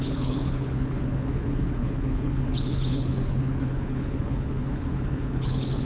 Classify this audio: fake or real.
fake